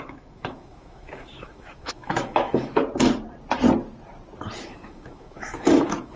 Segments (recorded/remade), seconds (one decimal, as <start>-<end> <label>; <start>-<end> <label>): 0.0-2.8 remade; 2.8-4.6 recorded; 4.6-6.2 remade